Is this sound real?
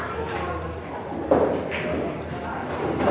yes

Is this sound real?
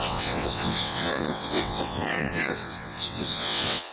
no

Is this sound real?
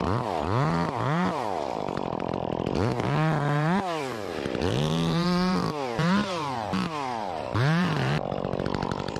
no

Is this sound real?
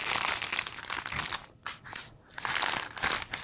yes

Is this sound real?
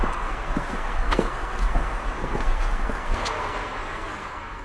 no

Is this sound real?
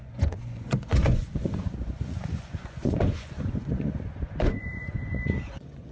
no